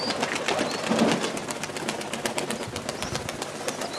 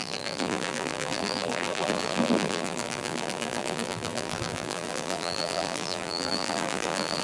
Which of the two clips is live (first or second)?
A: first